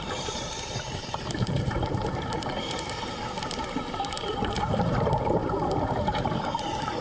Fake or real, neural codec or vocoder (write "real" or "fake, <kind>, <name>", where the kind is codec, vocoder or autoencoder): fake, vocoder, BigVGAN v2